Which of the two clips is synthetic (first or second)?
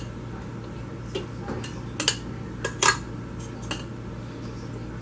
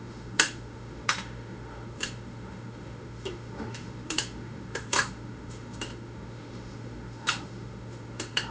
second